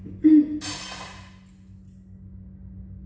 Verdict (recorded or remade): recorded